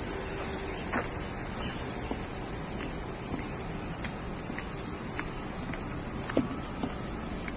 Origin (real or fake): real